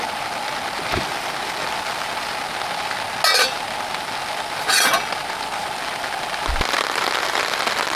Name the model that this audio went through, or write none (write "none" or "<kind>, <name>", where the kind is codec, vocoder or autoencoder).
none